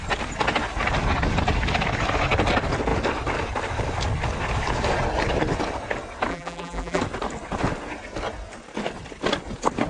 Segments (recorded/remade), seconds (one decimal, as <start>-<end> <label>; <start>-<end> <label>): 0.0-6.3 recorded; 6.3-7.0 remade; 7.0-9.9 recorded